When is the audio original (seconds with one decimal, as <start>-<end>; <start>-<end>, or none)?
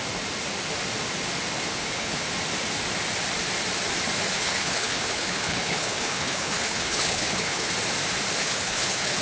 0.0-1.7; 2.3-4.3; 7.7-8.4